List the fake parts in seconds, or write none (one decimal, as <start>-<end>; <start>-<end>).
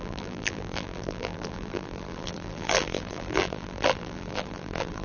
0.0-5.0